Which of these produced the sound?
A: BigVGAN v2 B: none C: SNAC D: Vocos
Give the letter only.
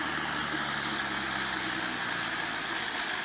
B